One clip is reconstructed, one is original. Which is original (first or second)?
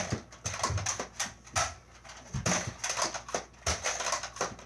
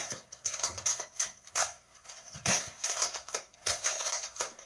first